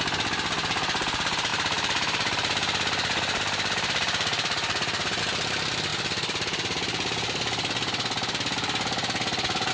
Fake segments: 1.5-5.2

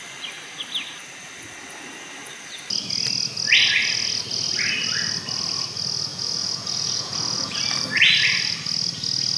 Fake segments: 6.1-7.6

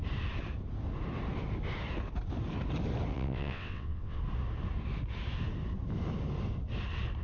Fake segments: 3.1-4.2

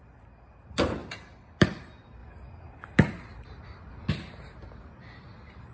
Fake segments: 1.0-1.8

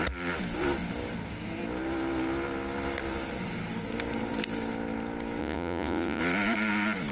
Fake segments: 5.4-6.2

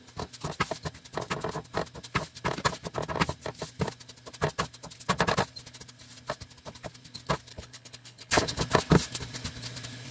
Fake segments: 7.5-8.6

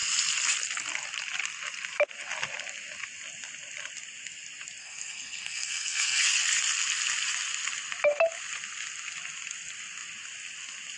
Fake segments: 4.8-6.2

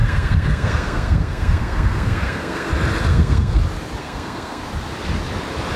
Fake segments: 0.0-2.7; 3.1-3.6; 4.0-4.6